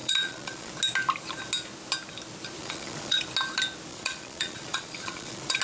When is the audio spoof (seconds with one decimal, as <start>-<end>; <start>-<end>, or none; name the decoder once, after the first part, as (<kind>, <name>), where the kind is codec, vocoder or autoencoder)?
0.0-0.7 (vocoder, Vocos); 2.6-3.2; 3.9-5.6